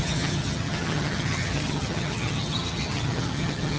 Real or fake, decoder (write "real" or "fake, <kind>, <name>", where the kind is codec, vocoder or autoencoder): fake, vocoder, HiFi-GAN